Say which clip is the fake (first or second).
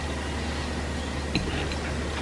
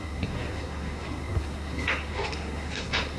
second